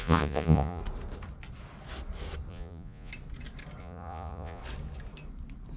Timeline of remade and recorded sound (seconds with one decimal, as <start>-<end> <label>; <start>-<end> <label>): 0.0-0.8 remade; 0.8-2.5 recorded; 2.5-3.1 remade; 3.1-3.8 recorded; 3.8-4.6 remade; 4.6-5.8 recorded